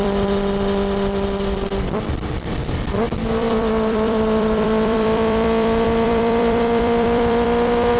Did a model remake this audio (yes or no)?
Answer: yes